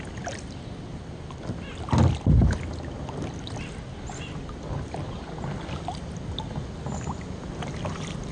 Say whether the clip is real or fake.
real